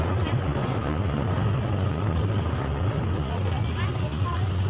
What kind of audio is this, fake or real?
fake